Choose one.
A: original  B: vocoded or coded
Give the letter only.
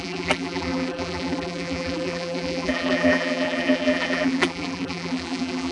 B